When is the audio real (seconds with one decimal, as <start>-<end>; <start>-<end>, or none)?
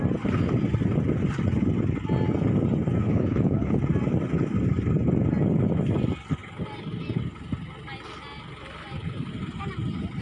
0.0-3.0; 3.8-10.2